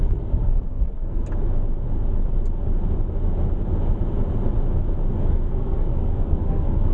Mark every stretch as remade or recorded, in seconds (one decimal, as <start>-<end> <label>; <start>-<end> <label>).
0.0-1.2 remade; 1.2-5.3 recorded; 5.3-6.9 remade